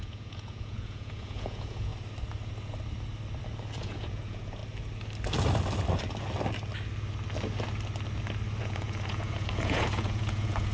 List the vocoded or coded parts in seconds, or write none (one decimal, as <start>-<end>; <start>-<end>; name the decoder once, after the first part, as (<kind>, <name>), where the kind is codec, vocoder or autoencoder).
0.0-1.9 (vocoder, Vocos); 3.8-4.6; 8.6-10.7